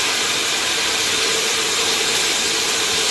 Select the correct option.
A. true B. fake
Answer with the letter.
A